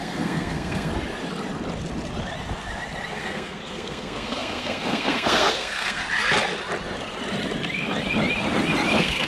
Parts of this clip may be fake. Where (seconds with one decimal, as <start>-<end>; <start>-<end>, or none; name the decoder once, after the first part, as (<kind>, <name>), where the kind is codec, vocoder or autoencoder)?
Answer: 0.0-0.9 (codec, SNAC); 3.1-6.0; 8.9-9.3